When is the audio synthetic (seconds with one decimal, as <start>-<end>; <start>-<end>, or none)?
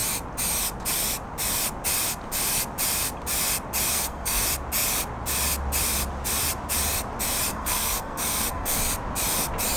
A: 3.9-4.4; 7.5-8.8